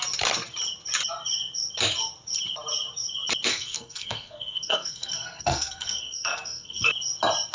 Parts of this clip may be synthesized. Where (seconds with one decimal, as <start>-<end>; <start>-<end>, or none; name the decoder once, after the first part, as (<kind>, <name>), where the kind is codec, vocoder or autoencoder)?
3.5-6.9 (codec, SNAC)